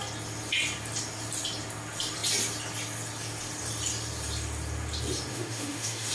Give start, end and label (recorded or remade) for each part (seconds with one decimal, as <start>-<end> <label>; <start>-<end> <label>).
0.0-5.3 recorded; 5.3-6.1 remade

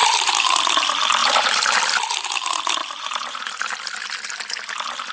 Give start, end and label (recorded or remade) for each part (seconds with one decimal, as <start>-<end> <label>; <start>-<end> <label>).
0.0-0.6 remade; 0.6-1.2 recorded; 1.2-1.8 remade; 1.8-2.8 recorded; 2.8-3.4 remade; 3.4-5.1 recorded

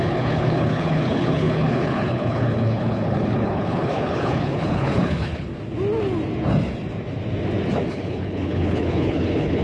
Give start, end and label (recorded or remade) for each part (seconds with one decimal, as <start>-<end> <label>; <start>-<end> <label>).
0.0-5.5 remade; 5.5-7.9 recorded; 7.9-9.6 remade

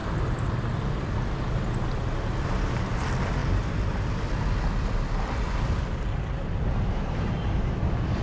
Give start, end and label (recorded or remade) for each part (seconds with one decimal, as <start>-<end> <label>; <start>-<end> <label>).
0.0-8.2 recorded

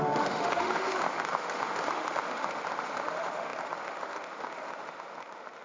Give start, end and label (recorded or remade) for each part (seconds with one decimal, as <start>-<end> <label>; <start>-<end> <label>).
0.0-5.6 remade

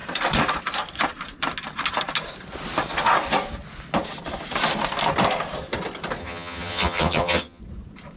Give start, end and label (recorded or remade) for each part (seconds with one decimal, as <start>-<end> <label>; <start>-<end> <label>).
0.0-6.2 recorded; 6.2-7.6 remade; 7.6-8.2 recorded